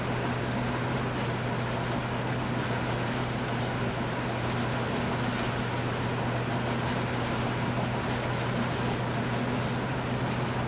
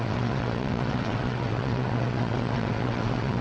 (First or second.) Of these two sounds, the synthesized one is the second